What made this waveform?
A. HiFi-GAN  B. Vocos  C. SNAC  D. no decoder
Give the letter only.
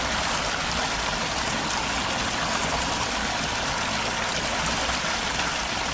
D